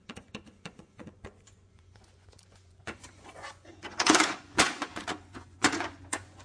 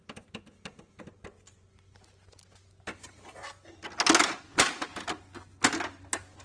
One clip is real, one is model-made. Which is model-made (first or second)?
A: first